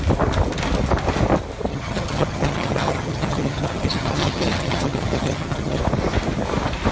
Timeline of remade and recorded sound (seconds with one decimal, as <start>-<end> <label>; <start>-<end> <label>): 0.0-1.7 recorded; 1.7-5.8 remade; 5.8-6.9 recorded